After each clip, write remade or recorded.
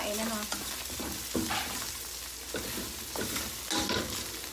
recorded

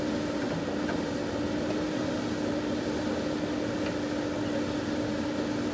recorded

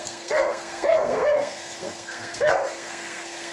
remade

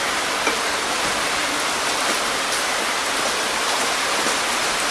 remade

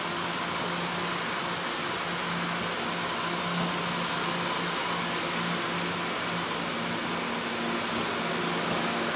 recorded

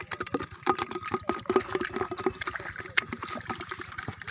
recorded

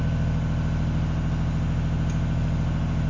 recorded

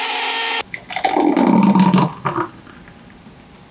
recorded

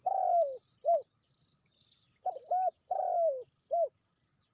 recorded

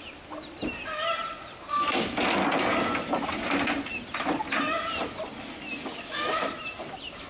recorded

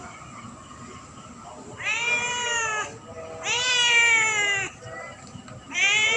recorded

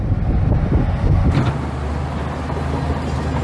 recorded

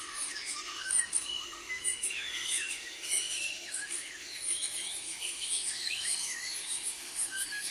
remade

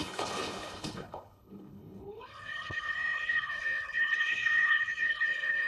remade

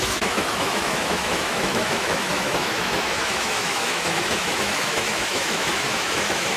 remade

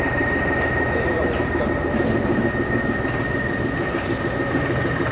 recorded